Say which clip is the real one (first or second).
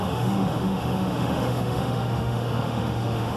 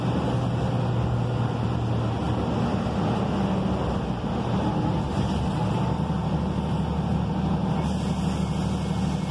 second